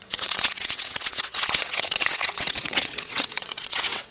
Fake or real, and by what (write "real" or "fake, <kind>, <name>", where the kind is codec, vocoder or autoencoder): fake, vocoder, WaveNeXt